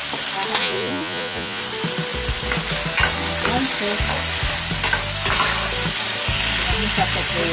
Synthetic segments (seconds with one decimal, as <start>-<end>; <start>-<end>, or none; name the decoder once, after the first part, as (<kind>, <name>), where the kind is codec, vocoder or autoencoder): 0.6-1.6 (vocoder, Vocos)